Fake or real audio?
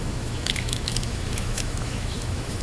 fake